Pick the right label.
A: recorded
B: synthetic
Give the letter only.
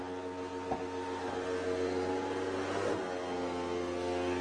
A